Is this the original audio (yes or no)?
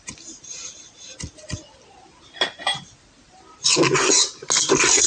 yes